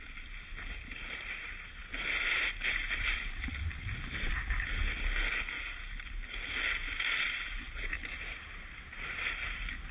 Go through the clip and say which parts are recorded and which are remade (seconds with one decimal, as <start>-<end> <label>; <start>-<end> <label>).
0.0-1.8 remade; 1.8-2.3 recorded; 2.3-4.8 remade; 4.8-6.8 recorded; 6.8-9.9 remade